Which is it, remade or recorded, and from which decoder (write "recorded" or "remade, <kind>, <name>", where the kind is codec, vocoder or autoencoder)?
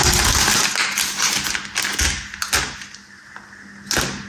recorded